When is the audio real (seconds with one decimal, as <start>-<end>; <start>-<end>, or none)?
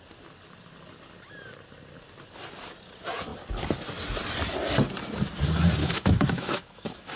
0.0-5.8